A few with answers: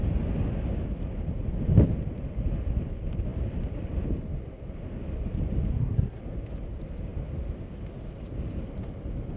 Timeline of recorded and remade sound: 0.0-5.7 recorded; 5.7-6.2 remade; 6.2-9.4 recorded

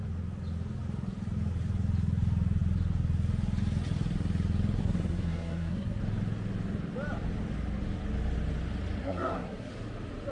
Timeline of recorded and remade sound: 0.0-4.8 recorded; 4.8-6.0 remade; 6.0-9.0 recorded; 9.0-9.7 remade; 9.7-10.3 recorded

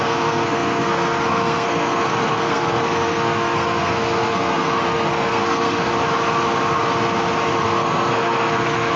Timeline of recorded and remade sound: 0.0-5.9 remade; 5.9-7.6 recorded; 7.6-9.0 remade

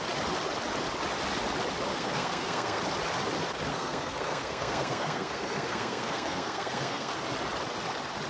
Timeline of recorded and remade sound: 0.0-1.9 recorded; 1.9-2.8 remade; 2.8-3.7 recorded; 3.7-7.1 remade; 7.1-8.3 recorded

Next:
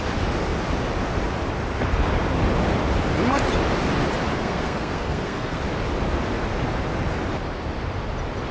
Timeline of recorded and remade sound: 0.0-4.3 recorded; 4.3-5.6 remade; 5.6-8.5 recorded

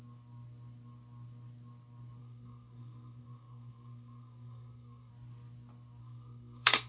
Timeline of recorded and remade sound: 0.0-2.2 recorded; 2.2-5.1 remade; 5.1-6.0 recorded; 6.0-6.9 remade

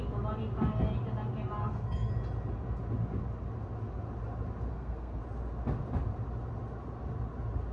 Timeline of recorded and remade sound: 0.0-1.6 recorded; 1.6-2.1 remade; 2.1-4.7 recorded; 4.7-5.2 remade; 5.2-7.7 recorded

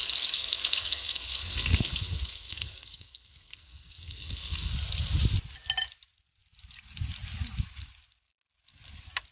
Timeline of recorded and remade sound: 0.0-4.7 remade; 4.7-9.3 recorded